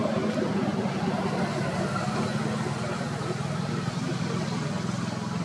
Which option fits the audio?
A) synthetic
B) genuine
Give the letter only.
B